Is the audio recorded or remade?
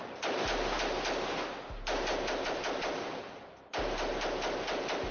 recorded